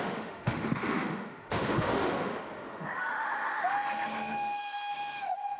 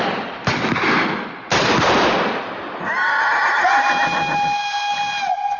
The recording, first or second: second